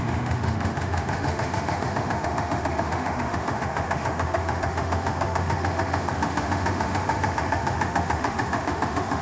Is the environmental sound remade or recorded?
remade